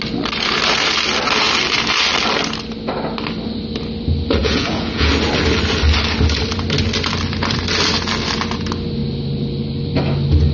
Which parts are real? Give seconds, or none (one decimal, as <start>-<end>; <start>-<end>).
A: 0.0-4.4; 5.1-10.5